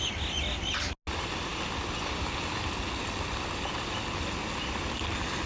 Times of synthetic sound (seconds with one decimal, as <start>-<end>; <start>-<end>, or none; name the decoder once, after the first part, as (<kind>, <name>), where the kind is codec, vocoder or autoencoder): none